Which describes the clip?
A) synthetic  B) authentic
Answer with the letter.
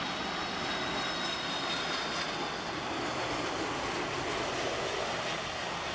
B